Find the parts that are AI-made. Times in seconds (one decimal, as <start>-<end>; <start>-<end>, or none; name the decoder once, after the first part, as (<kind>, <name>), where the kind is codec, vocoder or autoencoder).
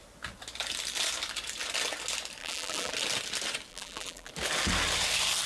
2.4-2.9 (vocoder, BigVGAN v2); 3.7-4.3